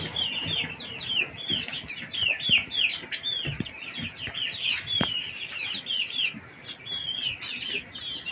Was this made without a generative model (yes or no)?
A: yes